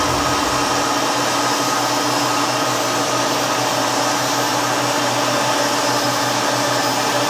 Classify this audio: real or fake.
real